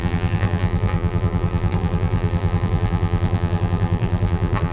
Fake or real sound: fake